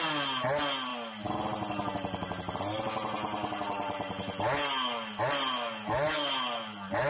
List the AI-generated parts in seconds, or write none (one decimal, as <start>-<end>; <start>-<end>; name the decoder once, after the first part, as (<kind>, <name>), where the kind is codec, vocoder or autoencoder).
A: none